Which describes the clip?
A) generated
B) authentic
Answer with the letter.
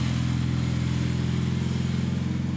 B